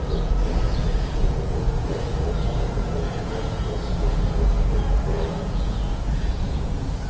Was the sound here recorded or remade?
remade